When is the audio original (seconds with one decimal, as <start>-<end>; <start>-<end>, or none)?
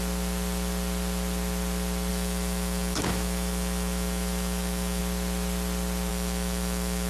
0.0-2.1; 5.0-6.1